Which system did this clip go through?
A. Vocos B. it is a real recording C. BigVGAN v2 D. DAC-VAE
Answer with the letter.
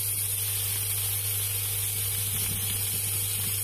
B